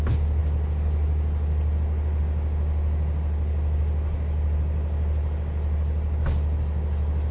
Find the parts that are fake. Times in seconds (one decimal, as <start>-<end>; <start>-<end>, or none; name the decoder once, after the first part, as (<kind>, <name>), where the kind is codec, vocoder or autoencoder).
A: none